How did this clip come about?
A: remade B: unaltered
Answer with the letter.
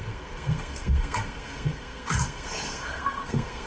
A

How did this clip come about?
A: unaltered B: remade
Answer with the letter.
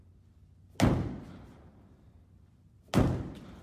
A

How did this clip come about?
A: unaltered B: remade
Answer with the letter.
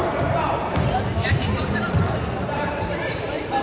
B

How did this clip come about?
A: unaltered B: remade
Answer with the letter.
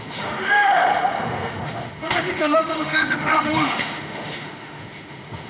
B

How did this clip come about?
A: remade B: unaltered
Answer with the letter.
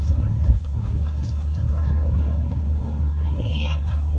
A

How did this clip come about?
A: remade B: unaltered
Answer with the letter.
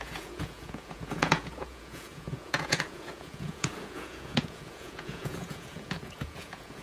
A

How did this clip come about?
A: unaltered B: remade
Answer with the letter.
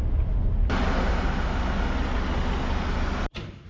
A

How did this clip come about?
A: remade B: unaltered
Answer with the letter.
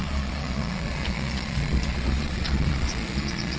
A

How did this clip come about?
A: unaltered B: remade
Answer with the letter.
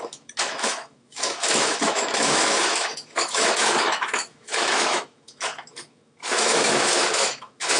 B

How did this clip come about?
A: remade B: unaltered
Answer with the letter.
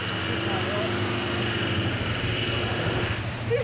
B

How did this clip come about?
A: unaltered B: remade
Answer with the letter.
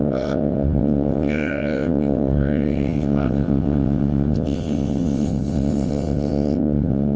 B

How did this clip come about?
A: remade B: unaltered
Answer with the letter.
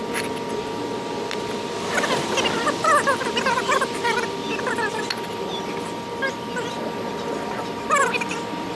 B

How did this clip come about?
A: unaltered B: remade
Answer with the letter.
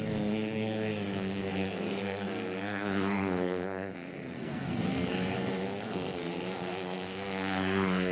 B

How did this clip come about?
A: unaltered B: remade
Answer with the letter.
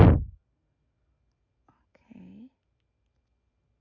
A